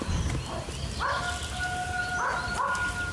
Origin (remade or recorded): recorded